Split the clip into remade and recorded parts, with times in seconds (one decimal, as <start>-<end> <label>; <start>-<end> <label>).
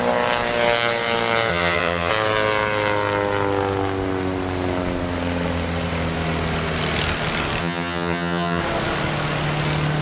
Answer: 0.0-1.5 recorded; 1.5-2.1 remade; 2.1-7.6 recorded; 7.6-8.6 remade; 8.6-10.0 recorded